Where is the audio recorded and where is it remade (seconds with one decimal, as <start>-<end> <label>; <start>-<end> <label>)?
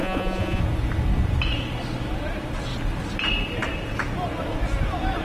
0.0-0.6 remade; 0.6-5.2 recorded